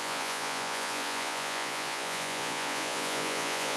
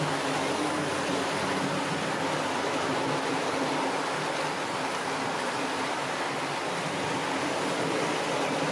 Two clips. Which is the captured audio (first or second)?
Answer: second